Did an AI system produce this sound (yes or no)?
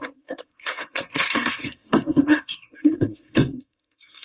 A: yes